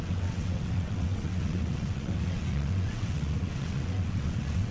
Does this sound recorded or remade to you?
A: remade